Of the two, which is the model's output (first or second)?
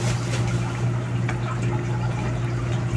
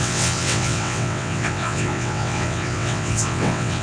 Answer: second